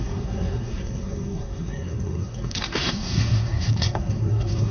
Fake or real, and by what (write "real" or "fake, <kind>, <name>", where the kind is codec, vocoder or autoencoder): fake, codec, SNAC